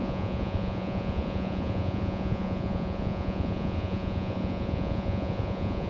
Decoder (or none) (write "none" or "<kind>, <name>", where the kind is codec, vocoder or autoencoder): vocoder, Vocos